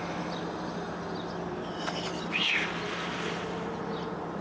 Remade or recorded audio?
recorded